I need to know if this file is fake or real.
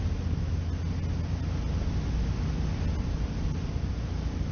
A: real